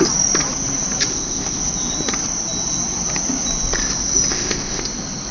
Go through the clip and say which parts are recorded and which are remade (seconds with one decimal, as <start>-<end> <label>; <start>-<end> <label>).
0.0-1.1 recorded; 1.1-1.6 remade; 1.6-4.3 recorded; 4.3-4.8 remade; 4.8-5.3 recorded